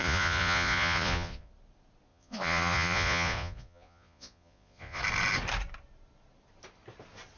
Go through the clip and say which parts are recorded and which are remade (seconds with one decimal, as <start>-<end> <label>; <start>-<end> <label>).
0.0-1.5 remade; 1.5-2.1 recorded; 2.1-5.0 remade; 5.0-7.4 recorded